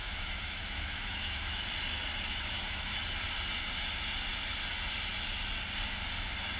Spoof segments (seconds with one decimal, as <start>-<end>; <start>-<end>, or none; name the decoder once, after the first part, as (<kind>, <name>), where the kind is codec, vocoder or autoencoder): 0.0-1.7 (autoencoder, DAC-VAE); 2.3-2.9